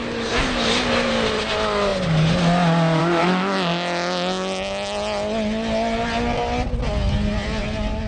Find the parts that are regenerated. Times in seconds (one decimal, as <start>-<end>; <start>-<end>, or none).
none